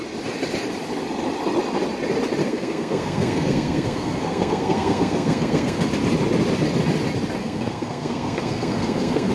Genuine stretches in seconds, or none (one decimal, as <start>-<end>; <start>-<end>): 0.0-2.4; 5.9-7.4